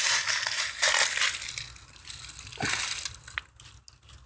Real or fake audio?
real